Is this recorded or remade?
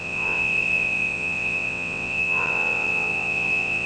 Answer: remade